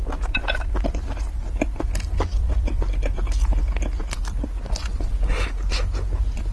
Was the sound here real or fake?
real